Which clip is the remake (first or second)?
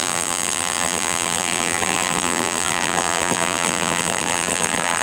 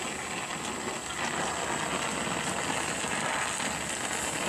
first